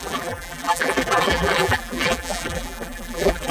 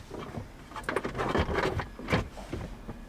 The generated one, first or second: first